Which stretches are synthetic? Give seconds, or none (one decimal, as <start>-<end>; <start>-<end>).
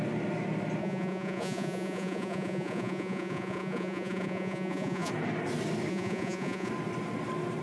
0.8-5.1; 5.9-6.7